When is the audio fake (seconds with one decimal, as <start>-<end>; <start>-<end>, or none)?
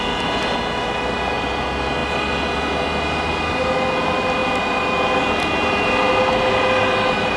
none